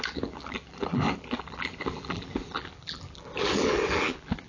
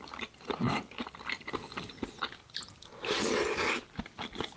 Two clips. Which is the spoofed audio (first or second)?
first